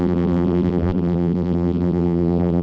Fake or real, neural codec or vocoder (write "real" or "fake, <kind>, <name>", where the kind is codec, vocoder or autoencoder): fake, vocoder, BigVGAN v2